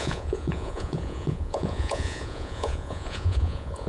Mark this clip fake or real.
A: fake